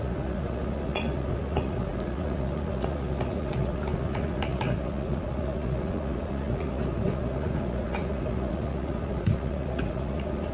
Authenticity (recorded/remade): remade